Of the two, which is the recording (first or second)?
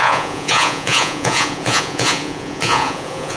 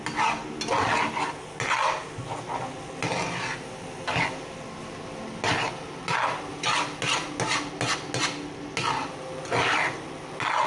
second